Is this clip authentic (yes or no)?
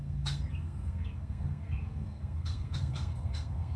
no